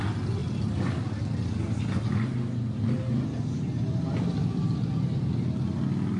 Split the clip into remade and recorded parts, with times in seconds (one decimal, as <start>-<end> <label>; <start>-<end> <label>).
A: 0.0-0.4 recorded; 0.4-1.5 remade; 1.5-6.2 recorded